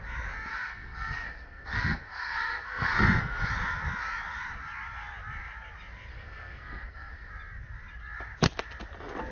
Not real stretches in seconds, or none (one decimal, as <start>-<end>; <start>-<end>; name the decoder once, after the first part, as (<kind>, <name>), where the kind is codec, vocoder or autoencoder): 0.5-3.5 (codec, SNAC); 6.1-7.3